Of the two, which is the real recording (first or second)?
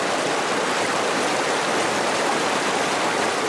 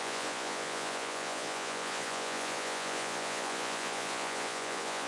first